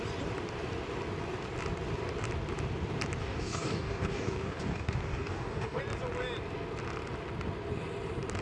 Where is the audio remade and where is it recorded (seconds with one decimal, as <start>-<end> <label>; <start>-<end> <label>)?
0.0-3.2 recorded; 3.2-5.8 remade; 5.8-8.4 recorded